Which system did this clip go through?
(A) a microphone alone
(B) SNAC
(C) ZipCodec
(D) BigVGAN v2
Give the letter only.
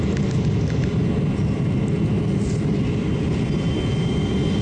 A